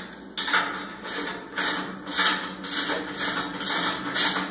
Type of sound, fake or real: real